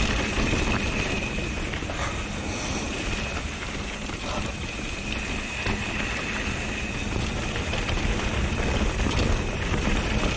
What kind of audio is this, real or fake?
real